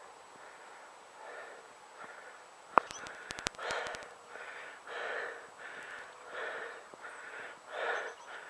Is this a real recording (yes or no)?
yes